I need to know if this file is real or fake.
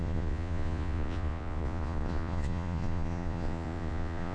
fake